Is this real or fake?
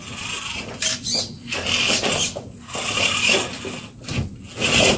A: real